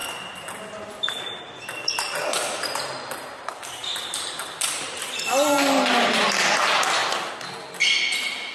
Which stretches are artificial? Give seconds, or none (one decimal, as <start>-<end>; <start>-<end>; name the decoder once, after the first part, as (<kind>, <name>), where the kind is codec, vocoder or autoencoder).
2.4-3.4 (vocoder, BigVGAN v2); 3.8-5.1